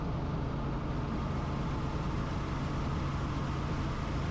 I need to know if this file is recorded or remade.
recorded